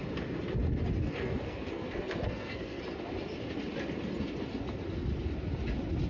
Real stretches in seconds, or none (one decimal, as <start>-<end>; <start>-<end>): 0.0-1.0; 2.8-6.1